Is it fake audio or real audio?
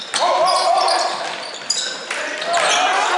real